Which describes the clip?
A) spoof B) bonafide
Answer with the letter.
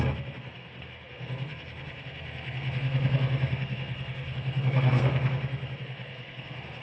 A